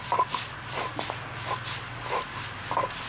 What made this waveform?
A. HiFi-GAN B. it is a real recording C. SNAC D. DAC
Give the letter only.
B